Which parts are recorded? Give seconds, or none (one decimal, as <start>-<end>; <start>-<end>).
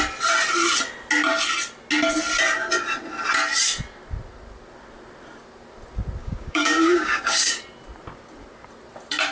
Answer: 0.0-6.2; 7.6-9.3